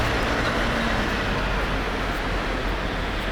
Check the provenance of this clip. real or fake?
real